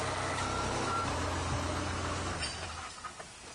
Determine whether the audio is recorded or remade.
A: recorded